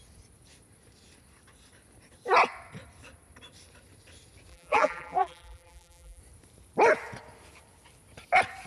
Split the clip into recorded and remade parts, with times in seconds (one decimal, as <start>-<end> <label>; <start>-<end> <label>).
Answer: 0.0-4.5 recorded; 4.5-6.2 remade; 6.2-8.7 recorded